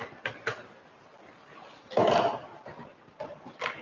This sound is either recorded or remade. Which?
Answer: recorded